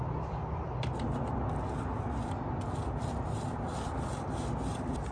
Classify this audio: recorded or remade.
recorded